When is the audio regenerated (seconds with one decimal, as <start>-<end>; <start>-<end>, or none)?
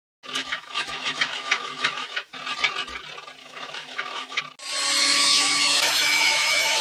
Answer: 0.4-2.3; 3.4-4.4; 5.0-6.8